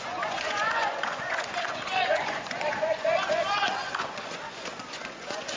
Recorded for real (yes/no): no